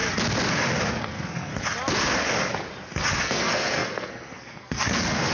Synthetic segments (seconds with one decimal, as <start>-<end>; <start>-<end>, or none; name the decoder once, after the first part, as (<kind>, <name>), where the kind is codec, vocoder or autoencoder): 0.9-1.5 (codec, SNAC); 3.2-5.3